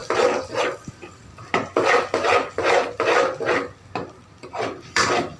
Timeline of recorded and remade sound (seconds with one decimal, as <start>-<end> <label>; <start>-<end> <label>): 0.0-0.6 recorded; 0.6-1.2 remade; 1.2-4.4 recorded; 4.4-5.4 remade